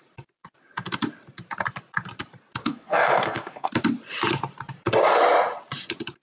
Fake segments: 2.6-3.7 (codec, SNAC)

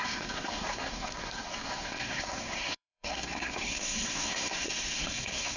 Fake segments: 0.0-5.6 (codec, SNAC)

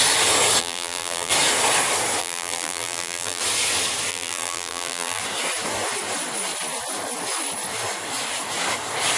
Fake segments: 0.6-1.3 (vocoder, BigVGAN v2); 2.2-3.4; 4.1-5.2

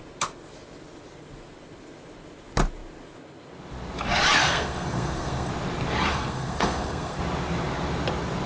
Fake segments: 4.4-5.5 (codec, SNAC); 6.1-7.2

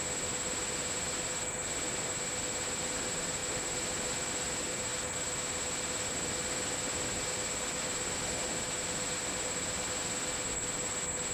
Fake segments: none